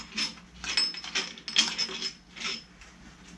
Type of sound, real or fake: real